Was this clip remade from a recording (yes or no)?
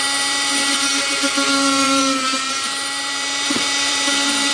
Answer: yes